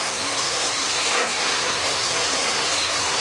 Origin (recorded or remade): remade